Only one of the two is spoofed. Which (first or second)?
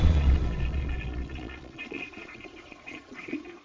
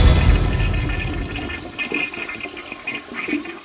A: first